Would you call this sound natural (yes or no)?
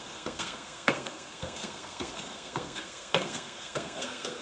no